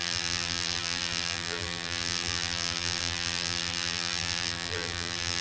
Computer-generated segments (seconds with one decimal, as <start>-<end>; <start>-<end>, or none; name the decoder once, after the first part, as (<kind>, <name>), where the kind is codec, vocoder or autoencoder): 0.0-5.4 (vocoder, BigVGAN v2)